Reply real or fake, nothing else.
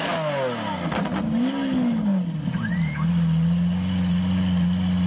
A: real